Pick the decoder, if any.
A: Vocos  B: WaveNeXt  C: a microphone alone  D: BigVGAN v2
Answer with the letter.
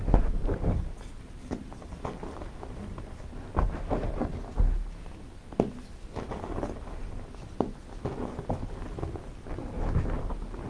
C